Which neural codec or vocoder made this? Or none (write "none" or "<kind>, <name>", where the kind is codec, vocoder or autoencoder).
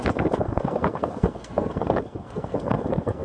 codec, SNAC